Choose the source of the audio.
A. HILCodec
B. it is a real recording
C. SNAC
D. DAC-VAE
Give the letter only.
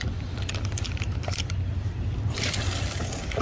B